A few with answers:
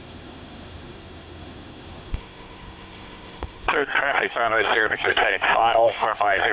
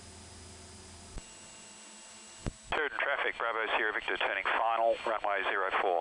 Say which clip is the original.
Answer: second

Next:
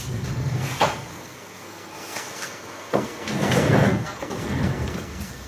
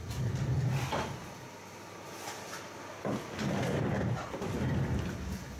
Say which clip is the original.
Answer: second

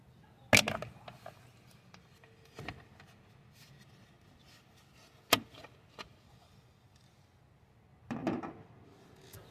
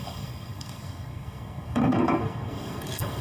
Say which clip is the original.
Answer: first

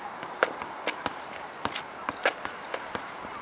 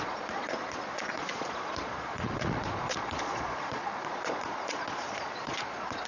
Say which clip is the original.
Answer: first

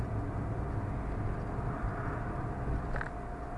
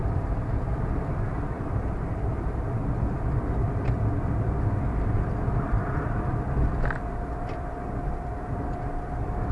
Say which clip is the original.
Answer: first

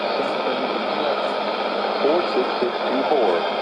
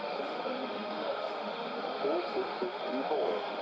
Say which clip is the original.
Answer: first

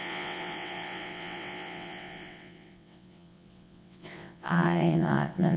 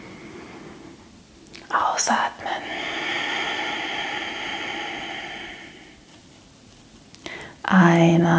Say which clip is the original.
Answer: second